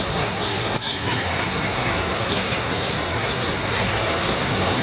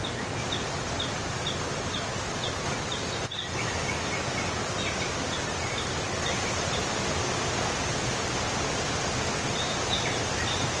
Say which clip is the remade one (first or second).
first